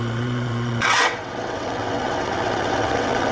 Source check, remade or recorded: remade